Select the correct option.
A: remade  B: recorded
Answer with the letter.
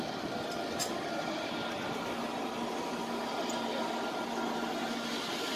B